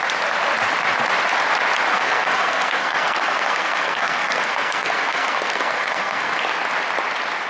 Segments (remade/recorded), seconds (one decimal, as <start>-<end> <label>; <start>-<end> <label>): 0.0-1.9 recorded; 1.9-6.4 remade; 6.4-7.5 recorded